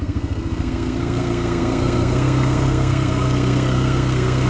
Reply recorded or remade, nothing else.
remade